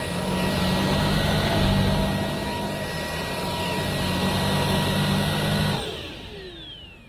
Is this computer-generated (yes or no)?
no